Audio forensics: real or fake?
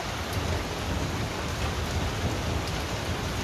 real